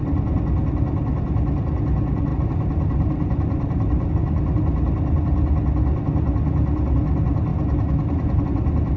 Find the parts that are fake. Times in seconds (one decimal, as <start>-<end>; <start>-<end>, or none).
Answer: 2.3-4.1; 7.5-8.4